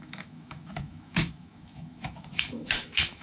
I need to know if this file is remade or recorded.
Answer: remade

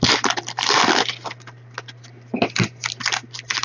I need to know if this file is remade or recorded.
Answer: recorded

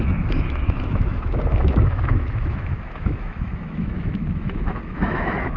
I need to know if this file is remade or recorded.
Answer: remade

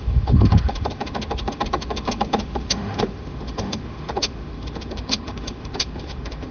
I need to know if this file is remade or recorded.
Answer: remade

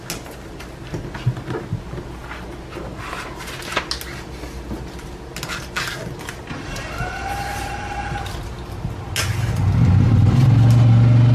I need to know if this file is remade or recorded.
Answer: recorded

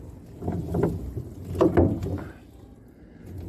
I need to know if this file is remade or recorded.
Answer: recorded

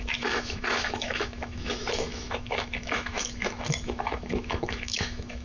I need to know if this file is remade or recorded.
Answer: remade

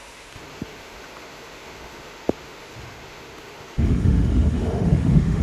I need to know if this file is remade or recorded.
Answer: remade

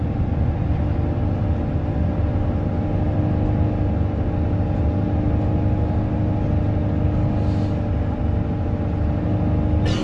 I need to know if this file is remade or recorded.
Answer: recorded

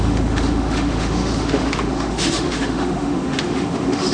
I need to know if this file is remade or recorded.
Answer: remade